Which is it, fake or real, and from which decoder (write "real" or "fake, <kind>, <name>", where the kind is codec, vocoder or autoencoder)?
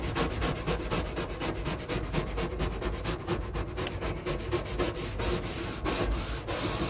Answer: real